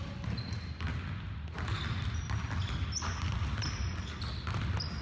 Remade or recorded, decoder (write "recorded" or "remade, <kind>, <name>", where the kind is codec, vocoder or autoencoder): recorded